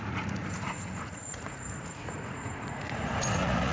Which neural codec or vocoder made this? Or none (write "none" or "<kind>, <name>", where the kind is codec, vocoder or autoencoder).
vocoder, Vocos